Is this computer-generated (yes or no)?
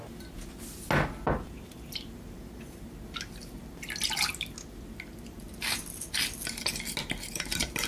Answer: no